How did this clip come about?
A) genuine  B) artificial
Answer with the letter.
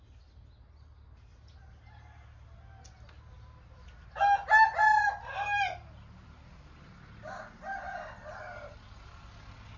A